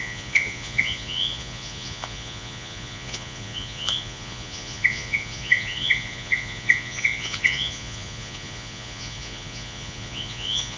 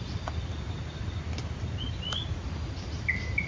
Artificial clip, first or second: first